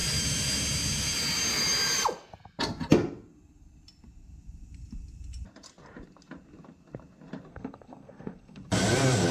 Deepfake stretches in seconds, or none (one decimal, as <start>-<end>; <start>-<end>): 7.5-8.6